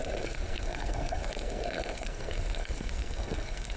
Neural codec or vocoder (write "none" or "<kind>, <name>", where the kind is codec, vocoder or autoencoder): codec, SNAC